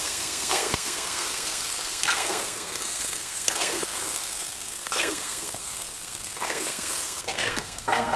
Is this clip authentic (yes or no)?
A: no